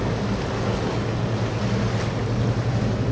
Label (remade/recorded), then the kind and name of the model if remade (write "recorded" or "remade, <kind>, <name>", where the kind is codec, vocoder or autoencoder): recorded